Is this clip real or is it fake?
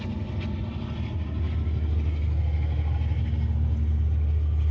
real